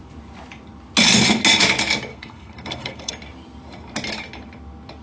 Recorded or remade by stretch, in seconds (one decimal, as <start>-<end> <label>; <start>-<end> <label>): 0.0-2.1 recorded; 2.1-3.1 remade; 3.1-5.0 recorded